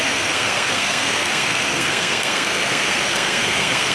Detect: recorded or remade remade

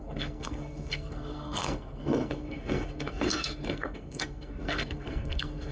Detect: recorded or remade remade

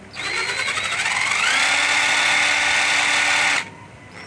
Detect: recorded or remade recorded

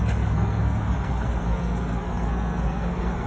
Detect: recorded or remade remade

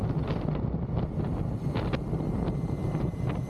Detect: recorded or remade recorded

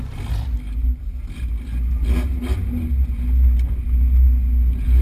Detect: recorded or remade recorded